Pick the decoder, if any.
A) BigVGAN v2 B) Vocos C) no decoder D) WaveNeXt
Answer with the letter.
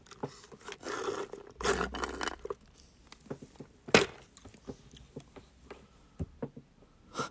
C